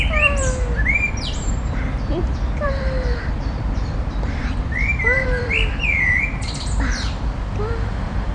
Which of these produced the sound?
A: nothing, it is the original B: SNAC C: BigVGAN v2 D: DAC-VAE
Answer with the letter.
C